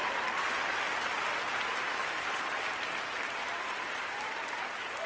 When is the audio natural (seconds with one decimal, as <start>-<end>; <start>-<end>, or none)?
0.0-5.1